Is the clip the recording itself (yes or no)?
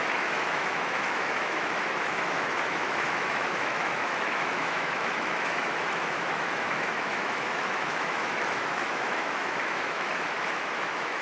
no